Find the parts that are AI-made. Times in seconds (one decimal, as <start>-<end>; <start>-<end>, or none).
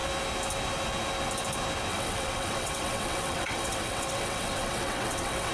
1.9-5.5